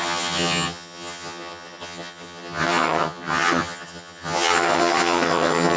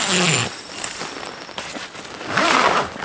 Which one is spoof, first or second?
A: first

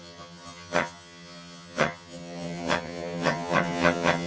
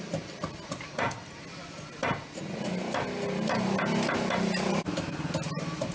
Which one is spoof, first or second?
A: first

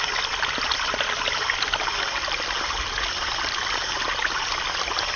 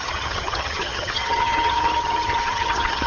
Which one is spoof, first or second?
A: second